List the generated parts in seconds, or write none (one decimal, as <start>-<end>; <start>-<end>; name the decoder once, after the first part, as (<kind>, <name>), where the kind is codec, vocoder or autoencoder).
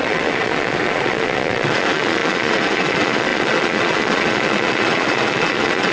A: 0.0-5.9 (vocoder, Vocos)